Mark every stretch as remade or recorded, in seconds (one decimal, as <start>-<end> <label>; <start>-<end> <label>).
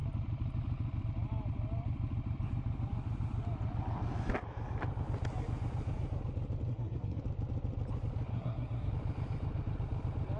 0.0-6.7 recorded; 6.7-7.2 remade; 7.2-8.3 recorded; 8.3-8.9 remade; 8.9-10.4 recorded